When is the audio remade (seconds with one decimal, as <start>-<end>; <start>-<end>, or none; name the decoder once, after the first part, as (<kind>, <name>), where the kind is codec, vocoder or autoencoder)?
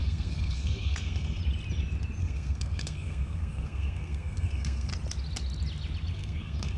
0.0-1.4 (codec, SNAC); 2.2-4.9; 6.1-6.8